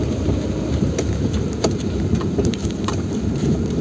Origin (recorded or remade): remade